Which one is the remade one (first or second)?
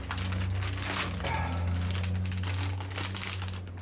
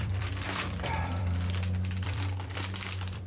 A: second